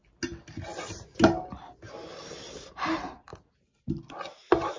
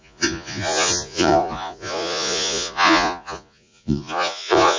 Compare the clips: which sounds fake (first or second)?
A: second